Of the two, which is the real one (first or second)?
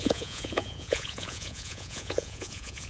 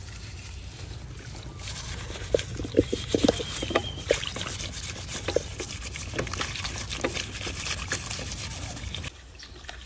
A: second